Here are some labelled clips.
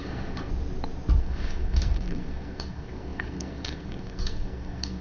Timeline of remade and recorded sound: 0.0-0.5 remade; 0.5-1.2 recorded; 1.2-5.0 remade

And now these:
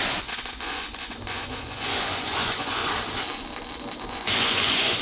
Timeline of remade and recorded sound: 0.0-2.8 remade; 2.8-4.0 recorded; 4.0-5.0 remade

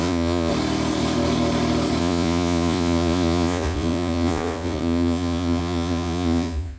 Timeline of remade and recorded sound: 0.0-0.5 remade; 0.5-2.0 recorded; 2.0-6.8 remade

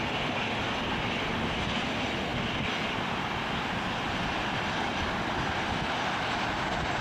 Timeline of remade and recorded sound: 0.0-7.0 recorded